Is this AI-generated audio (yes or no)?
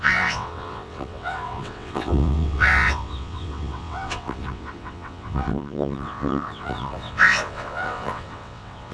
yes